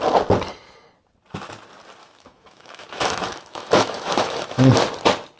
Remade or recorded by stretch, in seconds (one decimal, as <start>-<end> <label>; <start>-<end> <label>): 0.0-2.0 recorded; 2.0-4.7 remade; 4.7-5.4 recorded